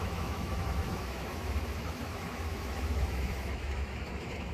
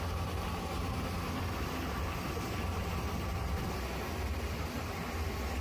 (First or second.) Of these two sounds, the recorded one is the second